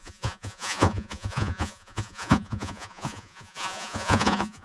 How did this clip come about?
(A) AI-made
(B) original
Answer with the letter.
A